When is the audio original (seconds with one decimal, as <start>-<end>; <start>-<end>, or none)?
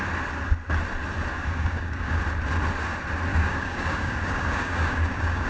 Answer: 0.0-1.3; 2.2-3.3